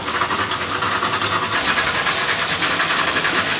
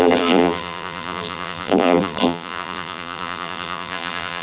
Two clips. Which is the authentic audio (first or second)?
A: first